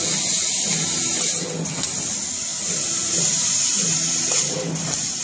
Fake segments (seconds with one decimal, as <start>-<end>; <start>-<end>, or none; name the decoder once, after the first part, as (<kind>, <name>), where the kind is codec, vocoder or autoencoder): none

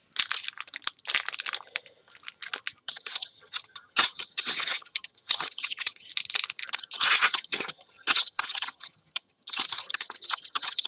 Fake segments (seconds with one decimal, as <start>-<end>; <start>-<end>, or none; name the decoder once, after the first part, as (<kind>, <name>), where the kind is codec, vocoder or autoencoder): 2.8-6.1 (vocoder, HiFi-GAN); 6.7-10.9

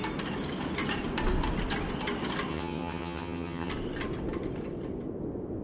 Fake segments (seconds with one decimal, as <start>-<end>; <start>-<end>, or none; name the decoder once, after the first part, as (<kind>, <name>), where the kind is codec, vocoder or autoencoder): 2.5-3.7 (vocoder, HiFi-GAN)

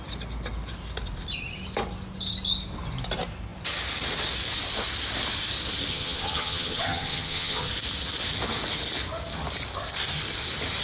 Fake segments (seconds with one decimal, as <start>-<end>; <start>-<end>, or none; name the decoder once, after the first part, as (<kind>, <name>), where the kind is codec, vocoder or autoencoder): 5.9-7.7 (vocoder, HiFi-GAN)

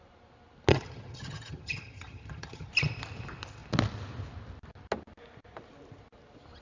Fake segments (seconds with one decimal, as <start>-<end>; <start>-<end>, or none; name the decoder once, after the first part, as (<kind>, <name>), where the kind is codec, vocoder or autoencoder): 0.7-2.7 (vocoder, HiFi-GAN)

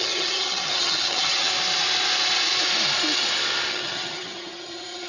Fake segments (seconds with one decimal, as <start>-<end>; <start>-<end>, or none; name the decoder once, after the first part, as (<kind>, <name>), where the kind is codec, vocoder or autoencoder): 0.0-1.5 (vocoder, HiFi-GAN); 3.7-5.1

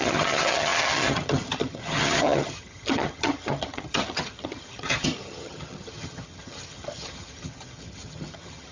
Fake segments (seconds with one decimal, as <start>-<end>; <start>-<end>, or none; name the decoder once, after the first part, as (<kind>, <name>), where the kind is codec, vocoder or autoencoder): 0.0-8.7 (vocoder, HiFi-GAN)

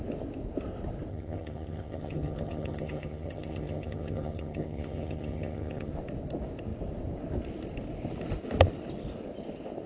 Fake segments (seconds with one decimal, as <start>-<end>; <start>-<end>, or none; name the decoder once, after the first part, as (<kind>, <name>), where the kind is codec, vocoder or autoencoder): 1.1-5.9 (vocoder, HiFi-GAN)